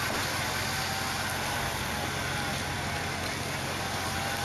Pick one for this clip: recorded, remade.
recorded